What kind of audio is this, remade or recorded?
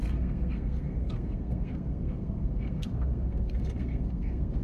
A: remade